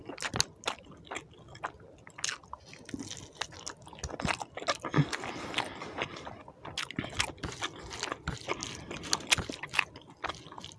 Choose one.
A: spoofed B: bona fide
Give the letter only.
B